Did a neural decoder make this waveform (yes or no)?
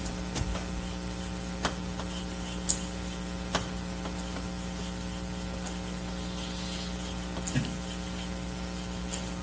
no